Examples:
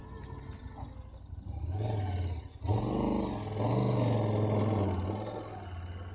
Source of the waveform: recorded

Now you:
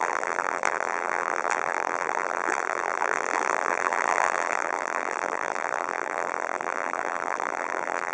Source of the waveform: remade